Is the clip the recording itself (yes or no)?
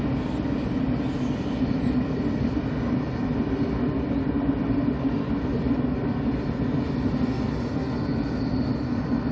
yes